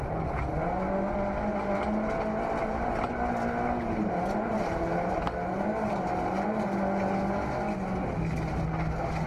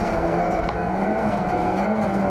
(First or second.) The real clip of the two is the first